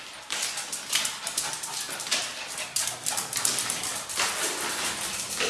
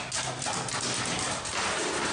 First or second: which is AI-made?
first